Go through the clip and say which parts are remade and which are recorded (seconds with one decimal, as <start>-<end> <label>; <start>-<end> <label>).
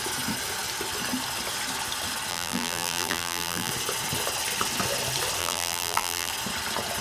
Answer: 0.0-2.3 recorded; 2.3-3.7 remade; 3.7-5.4 recorded; 5.4-6.3 remade; 6.3-7.0 recorded